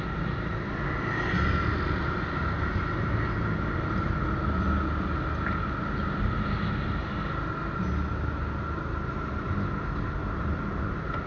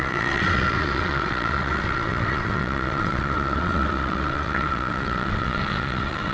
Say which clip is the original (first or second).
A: first